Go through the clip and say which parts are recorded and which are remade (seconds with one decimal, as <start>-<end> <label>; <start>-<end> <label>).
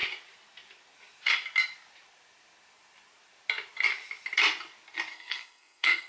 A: 0.0-5.1 recorded; 5.1-6.1 remade